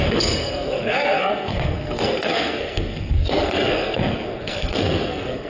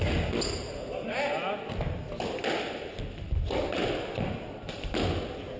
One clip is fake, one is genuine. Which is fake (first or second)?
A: first